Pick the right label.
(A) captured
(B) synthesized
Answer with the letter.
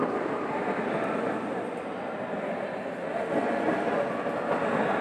A